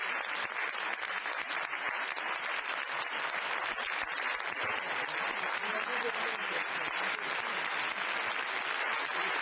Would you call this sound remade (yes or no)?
no